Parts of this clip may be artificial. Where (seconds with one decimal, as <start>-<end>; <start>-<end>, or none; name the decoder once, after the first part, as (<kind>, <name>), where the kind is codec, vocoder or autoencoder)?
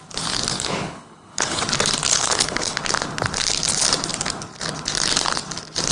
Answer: 0.5-1.6 (codec, HILCodec); 2.1-2.8